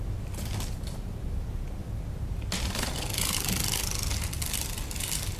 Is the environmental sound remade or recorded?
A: recorded